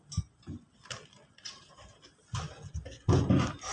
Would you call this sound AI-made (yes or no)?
no